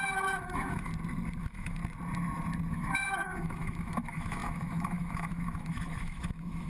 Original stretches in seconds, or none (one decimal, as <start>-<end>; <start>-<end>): 0.9-1.4; 1.8-2.7